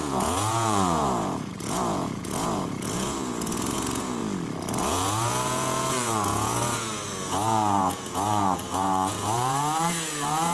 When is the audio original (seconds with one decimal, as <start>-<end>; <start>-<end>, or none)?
4.2-4.8

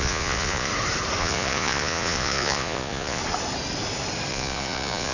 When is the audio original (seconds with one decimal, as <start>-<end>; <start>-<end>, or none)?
0.7-1.2; 3.2-4.3

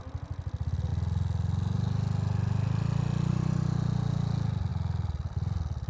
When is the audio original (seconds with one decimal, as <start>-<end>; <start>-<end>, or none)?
0.0-5.9

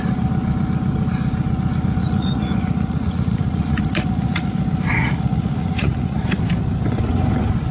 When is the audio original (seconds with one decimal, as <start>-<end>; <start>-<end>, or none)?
0.0-2.0; 4.5-5.0; 6.2-7.7

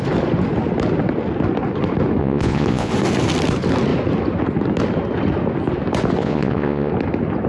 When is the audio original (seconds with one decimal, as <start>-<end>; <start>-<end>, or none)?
0.0-2.2; 2.9-6.2; 6.9-7.5

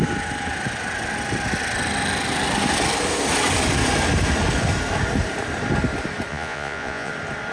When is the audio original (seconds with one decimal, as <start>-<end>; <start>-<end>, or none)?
0.0-6.3; 7.1-7.5